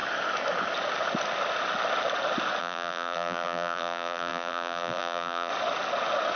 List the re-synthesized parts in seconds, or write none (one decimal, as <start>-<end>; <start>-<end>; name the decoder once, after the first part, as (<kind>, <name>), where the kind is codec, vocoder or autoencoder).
2.6-5.5 (vocoder, BigVGAN v2)